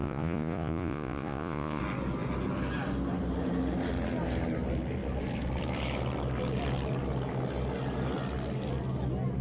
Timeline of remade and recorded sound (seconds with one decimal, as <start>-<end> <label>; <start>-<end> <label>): 0.0-1.8 remade; 1.8-9.4 recorded